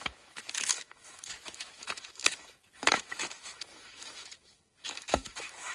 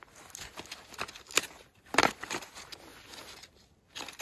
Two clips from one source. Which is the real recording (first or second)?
second